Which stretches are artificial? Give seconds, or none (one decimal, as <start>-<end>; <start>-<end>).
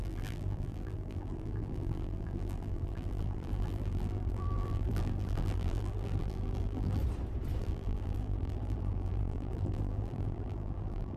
0.0-7.0; 7.6-11.2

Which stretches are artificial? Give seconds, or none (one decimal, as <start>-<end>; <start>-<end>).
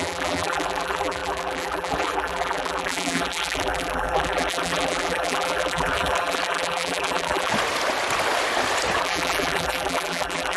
0.0-7.5; 9.0-10.6